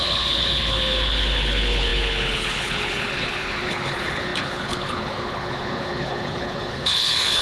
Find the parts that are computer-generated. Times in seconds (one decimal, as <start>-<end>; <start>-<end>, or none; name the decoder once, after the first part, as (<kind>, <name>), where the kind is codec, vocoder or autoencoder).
0.0-7.4 (codec, HILCodec)